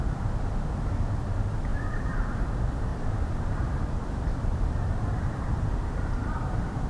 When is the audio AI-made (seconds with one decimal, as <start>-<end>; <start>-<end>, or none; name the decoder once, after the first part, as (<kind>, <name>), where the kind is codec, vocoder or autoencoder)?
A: 1.7-2.5 (vocoder, BigVGAN v2); 2.9-6.9